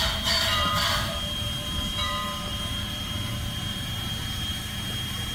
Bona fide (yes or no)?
no